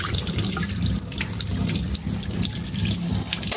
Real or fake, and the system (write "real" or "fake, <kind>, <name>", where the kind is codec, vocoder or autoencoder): real